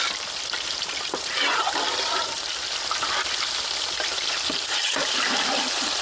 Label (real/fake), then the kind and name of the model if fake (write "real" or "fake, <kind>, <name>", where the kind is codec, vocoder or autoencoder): fake, vocoder, BigVGAN v2